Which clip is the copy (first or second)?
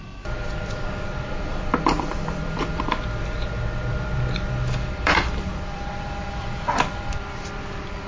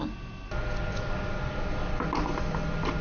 first